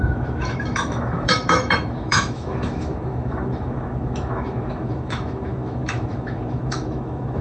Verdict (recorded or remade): remade